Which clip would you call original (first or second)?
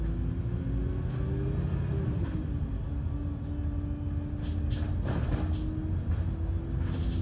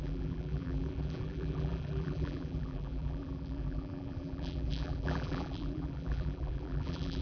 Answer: first